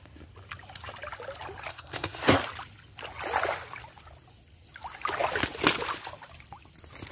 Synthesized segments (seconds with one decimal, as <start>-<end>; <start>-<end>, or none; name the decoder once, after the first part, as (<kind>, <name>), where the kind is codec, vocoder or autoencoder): 1.7-2.4 (codec, SNAC)